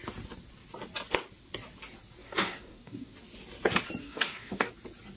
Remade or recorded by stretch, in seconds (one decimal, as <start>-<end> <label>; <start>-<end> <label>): 0.0-2.2 recorded; 2.2-3.1 remade; 3.1-4.0 recorded; 4.0-4.7 remade; 4.7-5.2 recorded